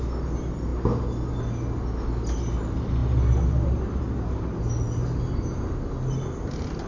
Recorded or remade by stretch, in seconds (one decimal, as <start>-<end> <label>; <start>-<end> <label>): 0.0-6.9 recorded